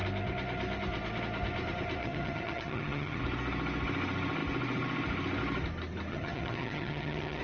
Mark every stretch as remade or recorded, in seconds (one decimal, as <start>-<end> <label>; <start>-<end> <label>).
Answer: 0.0-2.0 recorded; 2.0-3.2 remade; 3.2-6.1 recorded; 6.1-7.4 remade